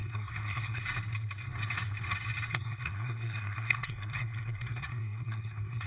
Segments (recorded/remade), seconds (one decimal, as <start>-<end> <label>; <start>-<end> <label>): 0.0-0.8 remade; 0.8-2.5 recorded; 2.5-5.9 remade